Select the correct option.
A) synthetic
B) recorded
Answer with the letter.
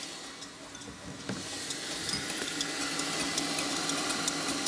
B